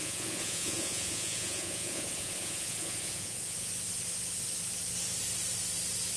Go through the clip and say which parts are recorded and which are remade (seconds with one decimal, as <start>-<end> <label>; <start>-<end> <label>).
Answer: 0.0-3.7 remade; 3.7-6.2 recorded